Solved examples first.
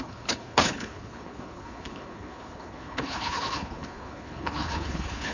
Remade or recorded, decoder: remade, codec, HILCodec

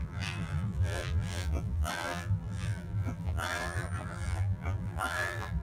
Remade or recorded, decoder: remade, vocoder, BigVGAN v2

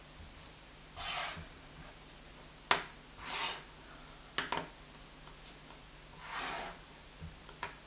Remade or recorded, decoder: recorded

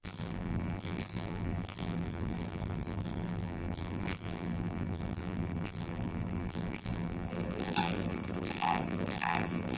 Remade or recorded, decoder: remade, vocoder, BigVGAN v2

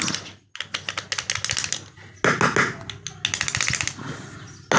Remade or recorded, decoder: recorded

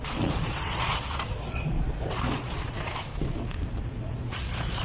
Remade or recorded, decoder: remade, vocoder, Vocos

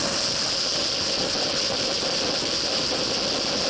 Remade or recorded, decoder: recorded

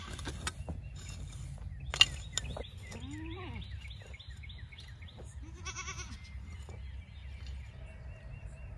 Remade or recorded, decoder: recorded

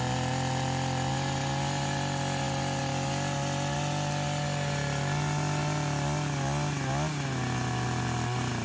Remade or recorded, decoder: recorded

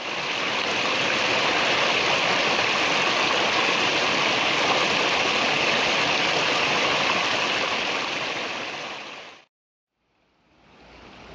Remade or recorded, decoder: recorded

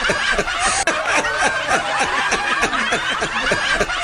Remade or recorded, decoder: remade, vocoder, BigVGAN v2